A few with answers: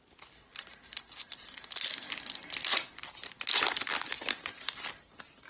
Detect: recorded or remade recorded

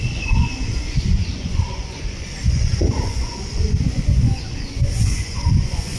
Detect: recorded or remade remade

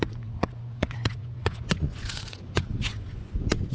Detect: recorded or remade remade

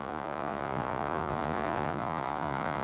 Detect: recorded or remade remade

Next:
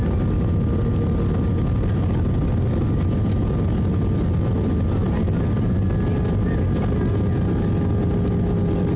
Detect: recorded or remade recorded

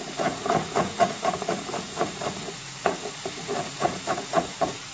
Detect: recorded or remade remade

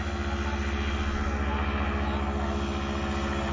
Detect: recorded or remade recorded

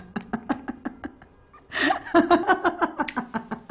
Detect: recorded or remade recorded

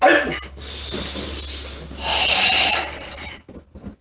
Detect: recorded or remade recorded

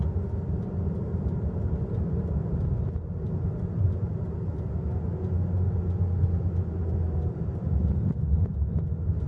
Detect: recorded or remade recorded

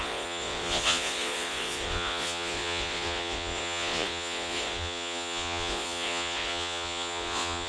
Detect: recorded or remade remade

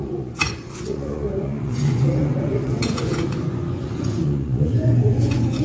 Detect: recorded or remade remade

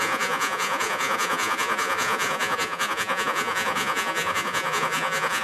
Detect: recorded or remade remade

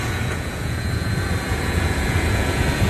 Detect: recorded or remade remade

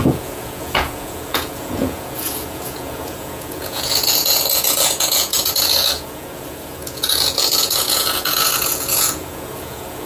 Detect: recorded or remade remade